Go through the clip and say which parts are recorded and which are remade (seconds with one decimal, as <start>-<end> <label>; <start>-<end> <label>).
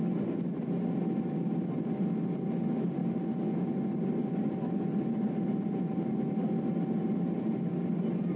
0.0-8.4 recorded